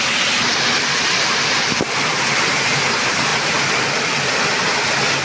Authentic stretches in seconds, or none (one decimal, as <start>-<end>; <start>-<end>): 0.0-5.2